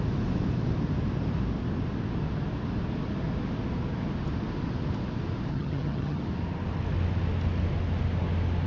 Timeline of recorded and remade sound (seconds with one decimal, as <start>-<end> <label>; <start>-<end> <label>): 0.0-5.5 recorded; 5.5-6.2 remade; 6.2-8.7 recorded